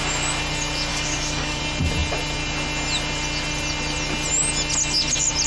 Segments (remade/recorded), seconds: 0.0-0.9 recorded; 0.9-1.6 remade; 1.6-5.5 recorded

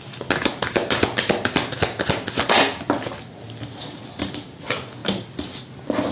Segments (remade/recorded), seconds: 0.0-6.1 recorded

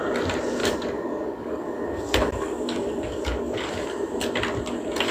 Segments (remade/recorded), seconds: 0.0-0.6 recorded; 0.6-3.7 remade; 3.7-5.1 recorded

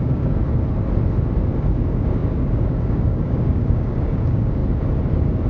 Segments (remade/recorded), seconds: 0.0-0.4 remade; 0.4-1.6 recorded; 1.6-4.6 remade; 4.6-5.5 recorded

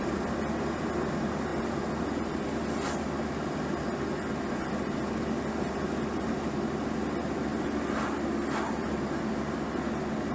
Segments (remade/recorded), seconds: 0.0-10.3 recorded

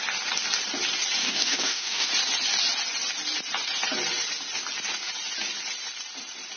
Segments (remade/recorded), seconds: 0.0-1.2 recorded; 1.2-2.1 remade; 2.1-6.6 recorded